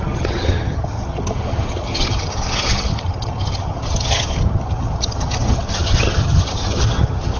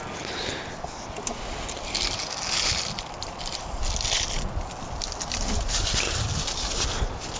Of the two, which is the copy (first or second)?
first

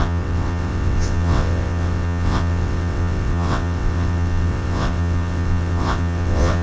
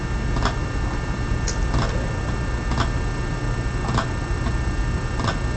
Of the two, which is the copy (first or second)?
first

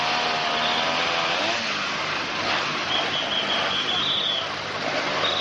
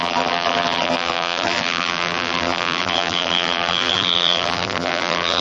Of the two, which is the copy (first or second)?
second